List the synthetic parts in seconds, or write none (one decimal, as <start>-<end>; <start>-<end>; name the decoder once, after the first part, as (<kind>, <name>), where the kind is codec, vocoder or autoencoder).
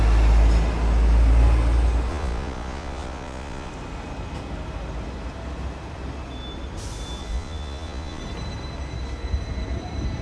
2.1-3.7 (vocoder, Vocos); 7.2-8.2